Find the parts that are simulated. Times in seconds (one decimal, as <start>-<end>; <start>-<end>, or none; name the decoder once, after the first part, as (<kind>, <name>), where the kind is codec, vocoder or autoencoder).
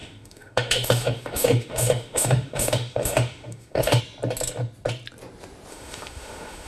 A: 0.0-4.0 (autoencoder, DAC-VAE); 5.7-6.7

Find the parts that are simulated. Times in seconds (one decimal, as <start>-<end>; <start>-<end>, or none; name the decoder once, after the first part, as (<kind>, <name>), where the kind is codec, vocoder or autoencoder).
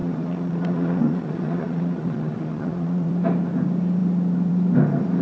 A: 0.0-3.1 (vocoder, Vocos)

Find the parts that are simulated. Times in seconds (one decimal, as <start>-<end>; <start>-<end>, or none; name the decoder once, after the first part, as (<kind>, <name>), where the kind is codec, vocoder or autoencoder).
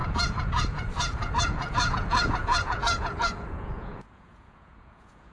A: 0.0-5.3 (vocoder, Vocos)